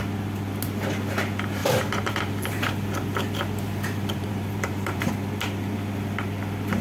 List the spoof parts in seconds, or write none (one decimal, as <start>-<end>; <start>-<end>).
1.6-5.1

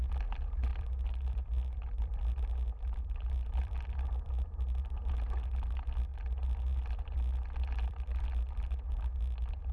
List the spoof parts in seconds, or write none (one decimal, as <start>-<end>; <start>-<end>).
0.7-4.9; 6.1-8.4

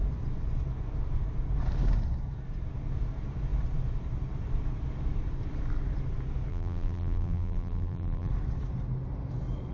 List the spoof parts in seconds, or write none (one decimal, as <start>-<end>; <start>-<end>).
6.5-8.3